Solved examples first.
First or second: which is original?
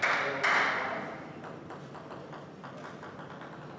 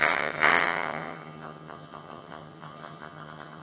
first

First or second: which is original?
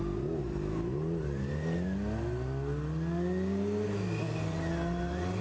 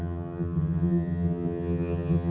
first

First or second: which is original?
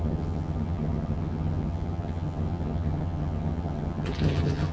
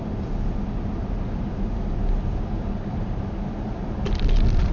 second